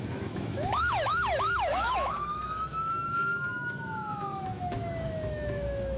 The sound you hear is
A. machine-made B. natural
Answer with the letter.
A